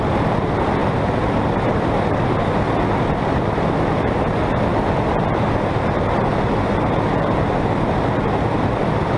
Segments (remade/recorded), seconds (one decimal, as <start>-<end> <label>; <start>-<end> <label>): 0.0-9.2 recorded